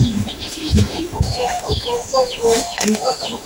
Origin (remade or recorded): remade